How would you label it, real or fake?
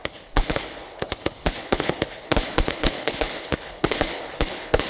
fake